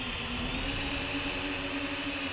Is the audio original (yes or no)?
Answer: no